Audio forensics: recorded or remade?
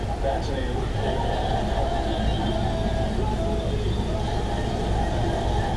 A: recorded